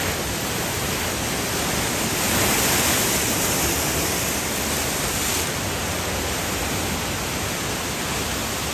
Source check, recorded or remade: recorded